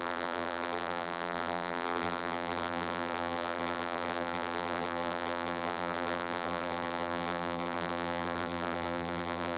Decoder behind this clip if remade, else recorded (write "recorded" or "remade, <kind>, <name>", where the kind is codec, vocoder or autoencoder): remade, vocoder, BigVGAN v2